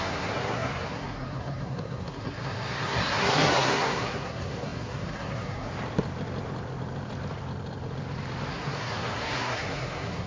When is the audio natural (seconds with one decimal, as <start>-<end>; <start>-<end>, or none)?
5.7-8.5